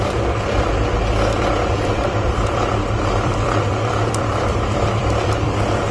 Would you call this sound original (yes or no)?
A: no